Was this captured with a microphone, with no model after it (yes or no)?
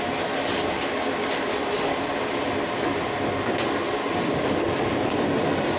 yes